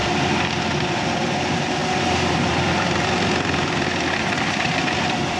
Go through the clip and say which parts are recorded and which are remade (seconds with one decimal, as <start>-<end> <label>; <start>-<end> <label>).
0.0-5.4 remade